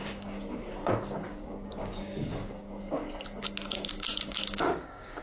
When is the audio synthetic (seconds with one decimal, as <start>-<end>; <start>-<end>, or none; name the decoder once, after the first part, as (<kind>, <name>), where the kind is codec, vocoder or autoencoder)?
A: 0.0-3.1 (codec, DAC); 4.1-5.2